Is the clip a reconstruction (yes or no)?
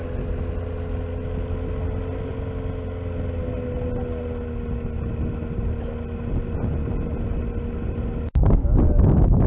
no